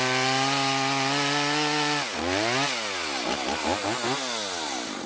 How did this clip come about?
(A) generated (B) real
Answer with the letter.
B